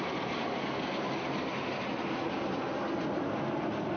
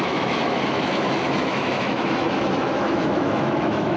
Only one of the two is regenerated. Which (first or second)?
second